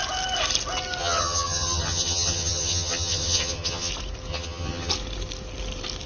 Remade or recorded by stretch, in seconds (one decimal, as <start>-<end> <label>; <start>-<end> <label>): 0.0-1.0 recorded; 1.0-3.9 remade; 3.9-4.3 recorded; 4.3-4.9 remade; 4.9-6.1 recorded